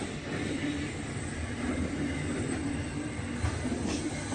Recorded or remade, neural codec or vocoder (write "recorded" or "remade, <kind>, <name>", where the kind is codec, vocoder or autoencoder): recorded